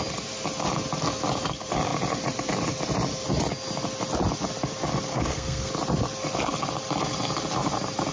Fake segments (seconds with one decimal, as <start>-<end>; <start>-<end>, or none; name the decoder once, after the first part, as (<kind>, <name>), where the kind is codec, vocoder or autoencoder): 5.1-5.7 (codec, SNAC)